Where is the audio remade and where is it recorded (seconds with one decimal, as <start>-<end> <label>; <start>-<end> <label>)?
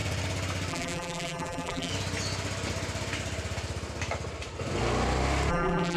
0.0-0.7 recorded; 0.7-1.9 remade; 1.9-5.5 recorded; 5.5-6.0 remade